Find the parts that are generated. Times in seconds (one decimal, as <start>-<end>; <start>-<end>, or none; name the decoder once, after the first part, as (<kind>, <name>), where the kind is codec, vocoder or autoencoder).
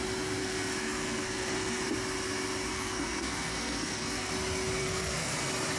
0.4-1.8 (codec, SNAC); 2.7-4.3; 4.8-5.3